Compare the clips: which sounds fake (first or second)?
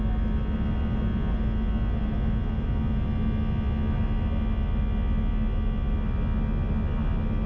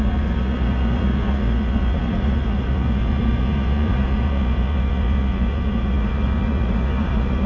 second